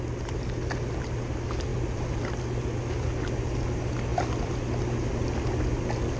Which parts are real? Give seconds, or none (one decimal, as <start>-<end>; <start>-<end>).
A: 0.0-6.2